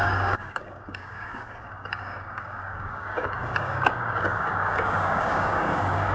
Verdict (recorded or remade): remade